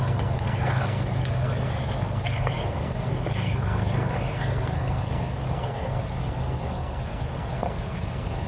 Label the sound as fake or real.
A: fake